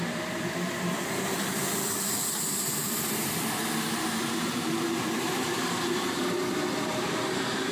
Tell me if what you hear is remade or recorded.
remade